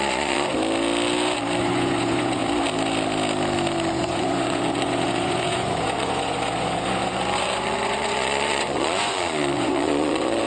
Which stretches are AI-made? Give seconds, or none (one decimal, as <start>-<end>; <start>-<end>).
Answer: 0.0-0.5; 1.6-2.4; 3.9-10.5